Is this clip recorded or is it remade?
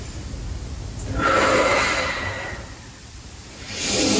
recorded